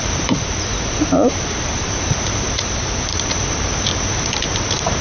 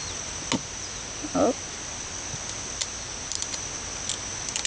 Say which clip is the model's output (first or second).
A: first